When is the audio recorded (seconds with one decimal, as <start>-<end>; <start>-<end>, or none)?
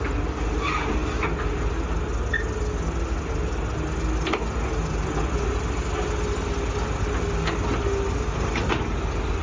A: 0.0-9.4